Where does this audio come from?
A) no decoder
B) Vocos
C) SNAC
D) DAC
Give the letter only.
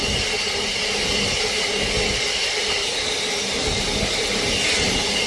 A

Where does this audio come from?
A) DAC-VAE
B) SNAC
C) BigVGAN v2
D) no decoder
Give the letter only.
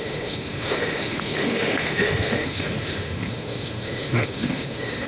A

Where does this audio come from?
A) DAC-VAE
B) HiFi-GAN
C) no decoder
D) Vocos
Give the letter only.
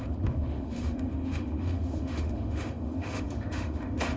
A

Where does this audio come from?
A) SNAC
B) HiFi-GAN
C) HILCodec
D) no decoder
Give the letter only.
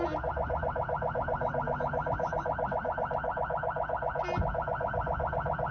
D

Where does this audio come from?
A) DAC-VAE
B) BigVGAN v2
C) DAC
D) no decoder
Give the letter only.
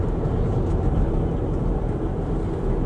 D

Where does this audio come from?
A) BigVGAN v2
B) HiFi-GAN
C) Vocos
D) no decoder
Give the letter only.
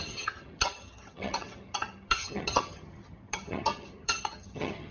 B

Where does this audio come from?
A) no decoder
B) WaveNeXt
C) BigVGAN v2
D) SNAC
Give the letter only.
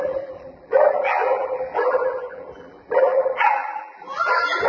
C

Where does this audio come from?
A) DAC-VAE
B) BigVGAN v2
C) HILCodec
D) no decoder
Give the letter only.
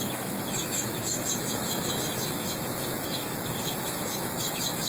A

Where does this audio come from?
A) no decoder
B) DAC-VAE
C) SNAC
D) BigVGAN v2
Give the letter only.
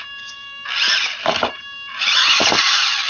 D